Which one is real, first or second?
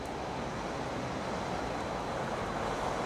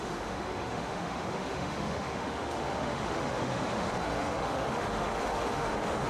first